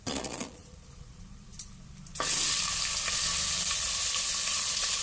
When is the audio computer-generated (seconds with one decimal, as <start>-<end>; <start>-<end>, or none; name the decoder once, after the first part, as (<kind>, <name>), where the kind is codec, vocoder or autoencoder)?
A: 0.0-1.5 (vocoder, Vocos); 4.5-5.0